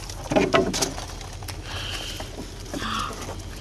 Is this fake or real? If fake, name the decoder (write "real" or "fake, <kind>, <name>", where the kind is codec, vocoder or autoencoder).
real